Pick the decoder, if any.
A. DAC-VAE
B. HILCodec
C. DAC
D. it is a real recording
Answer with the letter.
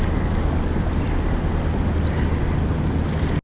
D